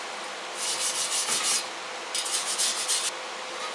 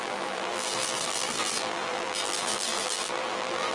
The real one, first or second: first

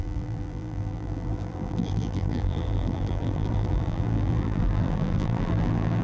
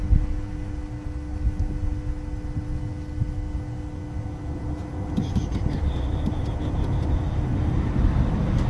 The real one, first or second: second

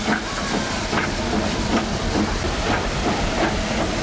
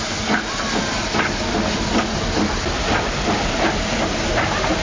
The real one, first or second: second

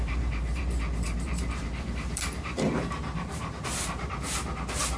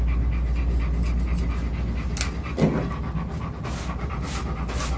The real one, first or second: second